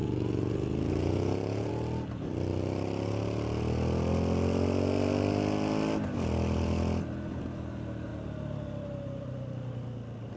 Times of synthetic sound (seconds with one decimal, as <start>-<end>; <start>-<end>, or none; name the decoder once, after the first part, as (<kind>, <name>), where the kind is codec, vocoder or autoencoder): 0.0-1.7 (vocoder, Vocos)